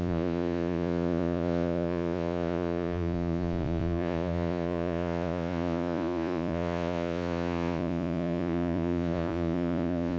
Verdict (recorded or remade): remade